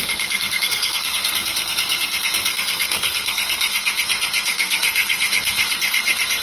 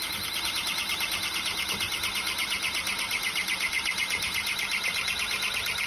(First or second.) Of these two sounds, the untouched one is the second